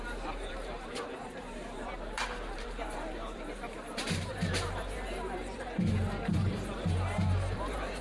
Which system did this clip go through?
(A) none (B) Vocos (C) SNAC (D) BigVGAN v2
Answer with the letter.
D